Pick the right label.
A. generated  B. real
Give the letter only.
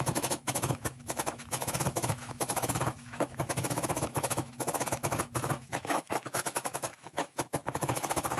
A